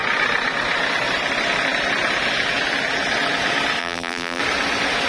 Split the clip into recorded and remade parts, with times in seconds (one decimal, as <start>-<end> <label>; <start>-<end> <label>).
0.0-3.8 recorded; 3.8-4.4 remade; 4.4-5.1 recorded